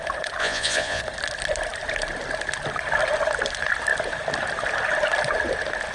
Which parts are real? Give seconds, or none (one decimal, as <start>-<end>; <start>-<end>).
0.0-0.4; 1.0-5.9